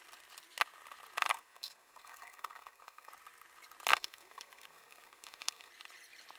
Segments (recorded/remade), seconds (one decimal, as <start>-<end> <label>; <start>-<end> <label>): 0.0-1.3 recorded; 1.3-3.1 remade; 3.1-3.9 recorded; 3.9-5.7 remade; 5.7-6.4 recorded

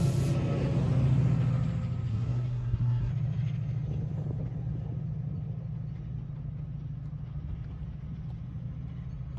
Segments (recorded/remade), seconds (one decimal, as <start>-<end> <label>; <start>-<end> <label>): 0.0-2.1 recorded; 2.1-3.1 remade; 3.1-9.4 recorded

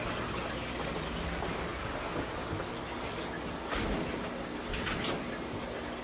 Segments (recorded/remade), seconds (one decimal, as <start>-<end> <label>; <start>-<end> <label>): 0.0-6.0 recorded

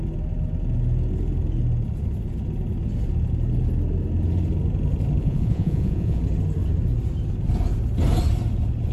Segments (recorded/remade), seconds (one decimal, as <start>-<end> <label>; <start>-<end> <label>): 0.0-5.2 recorded; 5.2-6.2 remade; 6.2-8.9 recorded

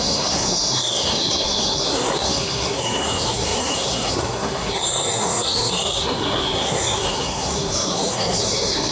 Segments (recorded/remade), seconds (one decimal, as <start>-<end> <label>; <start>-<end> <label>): 0.0-8.9 remade

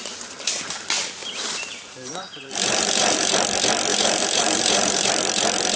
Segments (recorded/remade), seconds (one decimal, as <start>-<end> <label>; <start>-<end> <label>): 0.0-1.2 recorded; 1.2-3.3 remade; 3.3-3.9 recorded; 3.9-5.1 remade; 5.1-5.8 recorded

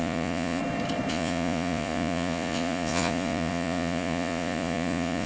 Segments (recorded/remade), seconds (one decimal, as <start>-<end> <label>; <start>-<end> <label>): 0.0-0.6 remade; 0.6-1.1 recorded; 1.1-5.3 remade